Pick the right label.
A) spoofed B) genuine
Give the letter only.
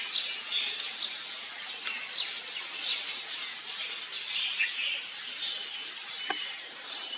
B